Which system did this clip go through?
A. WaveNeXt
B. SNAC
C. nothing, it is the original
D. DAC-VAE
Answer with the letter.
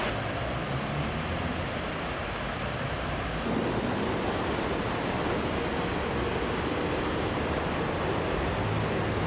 C